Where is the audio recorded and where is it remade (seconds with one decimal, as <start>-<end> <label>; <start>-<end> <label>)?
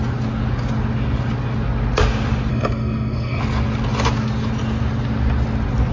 0.0-2.5 recorded; 2.5-3.4 remade; 3.4-5.9 recorded